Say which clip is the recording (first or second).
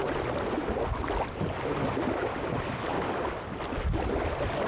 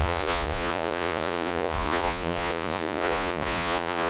first